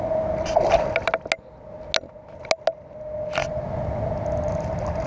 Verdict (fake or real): real